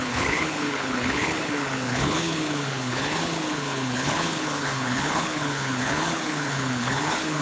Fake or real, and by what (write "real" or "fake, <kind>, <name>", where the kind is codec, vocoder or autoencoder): fake, codec, HILCodec